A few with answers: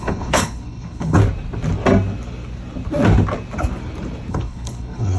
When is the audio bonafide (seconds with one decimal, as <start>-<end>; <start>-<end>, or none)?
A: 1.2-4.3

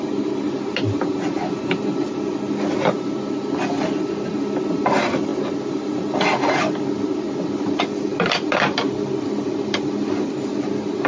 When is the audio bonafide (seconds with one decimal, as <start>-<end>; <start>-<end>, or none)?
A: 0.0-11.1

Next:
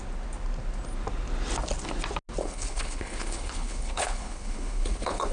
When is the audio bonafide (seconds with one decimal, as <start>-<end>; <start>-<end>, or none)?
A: 0.0-2.4